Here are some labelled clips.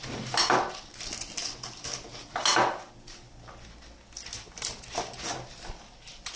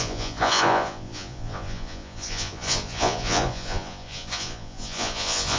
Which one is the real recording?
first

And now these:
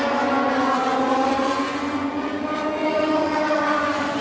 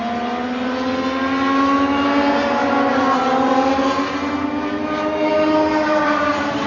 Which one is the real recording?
second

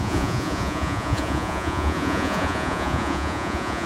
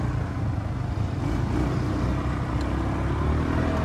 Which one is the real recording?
second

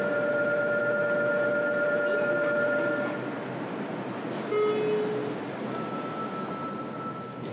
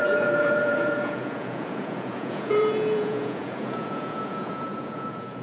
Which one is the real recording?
first